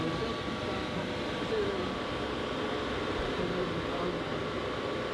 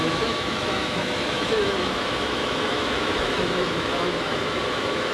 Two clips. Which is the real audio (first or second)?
first